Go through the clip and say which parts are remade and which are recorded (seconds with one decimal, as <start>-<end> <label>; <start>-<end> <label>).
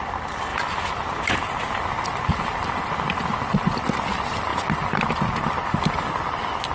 0.0-6.7 remade